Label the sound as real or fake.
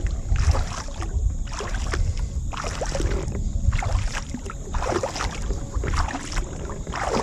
real